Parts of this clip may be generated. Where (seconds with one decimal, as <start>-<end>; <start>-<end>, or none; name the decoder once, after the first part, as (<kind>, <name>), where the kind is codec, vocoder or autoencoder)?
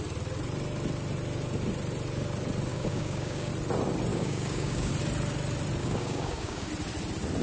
2.7-3.5 (codec, DAC); 4.1-4.9; 5.8-6.7